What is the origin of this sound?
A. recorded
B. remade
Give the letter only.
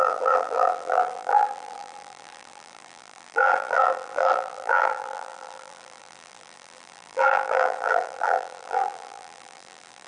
B